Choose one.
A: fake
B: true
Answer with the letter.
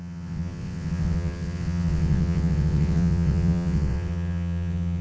A